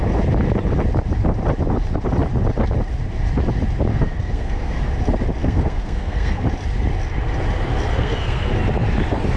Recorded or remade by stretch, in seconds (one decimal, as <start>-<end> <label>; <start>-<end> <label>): 0.0-3.9 recorded; 3.9-4.9 remade; 4.9-5.4 recorded; 5.4-6.4 remade; 6.4-7.9 recorded; 7.9-8.5 remade; 8.5-9.4 recorded